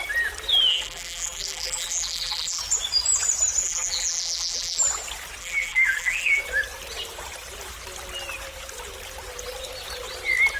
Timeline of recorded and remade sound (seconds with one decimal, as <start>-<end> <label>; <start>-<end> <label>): 0.0-0.7 recorded; 0.7-2.6 remade; 2.6-3.6 recorded; 3.6-4.8 remade; 4.8-5.4 recorded; 5.4-6.4 remade; 6.4-10.6 recorded